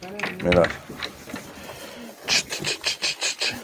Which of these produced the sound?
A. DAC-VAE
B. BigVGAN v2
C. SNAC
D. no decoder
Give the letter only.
D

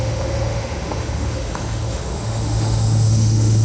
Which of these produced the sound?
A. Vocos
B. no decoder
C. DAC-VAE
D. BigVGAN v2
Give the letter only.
C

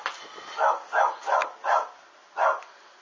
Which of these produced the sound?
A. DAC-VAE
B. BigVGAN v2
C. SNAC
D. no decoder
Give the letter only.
D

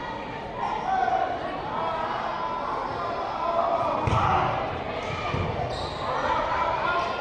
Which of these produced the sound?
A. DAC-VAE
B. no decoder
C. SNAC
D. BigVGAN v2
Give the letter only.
B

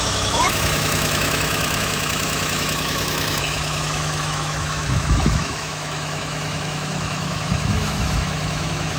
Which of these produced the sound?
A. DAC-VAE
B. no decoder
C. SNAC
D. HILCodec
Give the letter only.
A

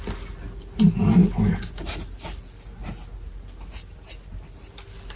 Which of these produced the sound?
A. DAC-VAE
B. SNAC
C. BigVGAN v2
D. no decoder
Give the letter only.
D